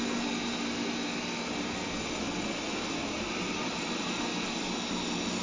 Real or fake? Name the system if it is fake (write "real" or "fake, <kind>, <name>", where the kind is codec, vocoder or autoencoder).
real